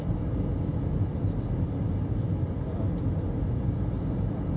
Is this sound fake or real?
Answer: real